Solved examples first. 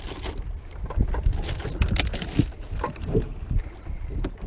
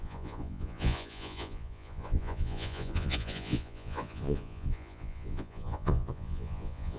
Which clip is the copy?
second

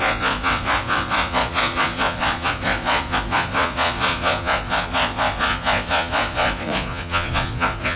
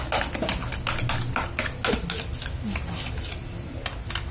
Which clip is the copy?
first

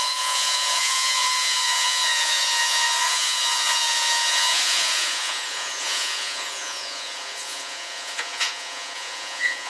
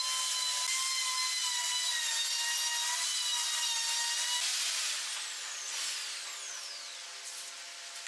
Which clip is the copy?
first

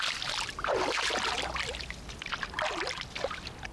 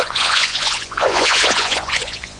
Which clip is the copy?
second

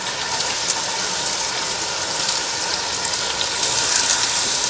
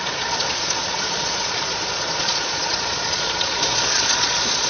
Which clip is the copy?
second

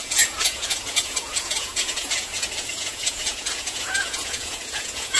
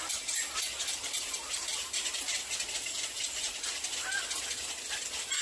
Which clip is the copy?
first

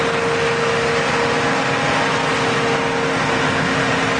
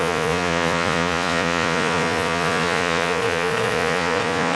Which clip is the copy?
second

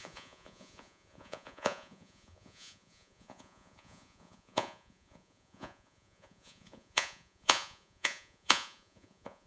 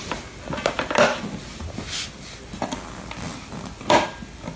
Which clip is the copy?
first